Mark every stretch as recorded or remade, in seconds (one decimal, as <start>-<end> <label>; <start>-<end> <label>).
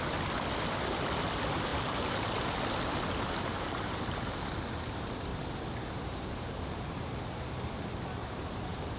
0.0-1.7 recorded; 1.7-2.4 remade; 2.4-3.5 recorded; 3.5-4.3 remade; 4.3-5.3 recorded; 5.3-7.8 remade; 7.8-8.2 recorded; 8.2-9.0 remade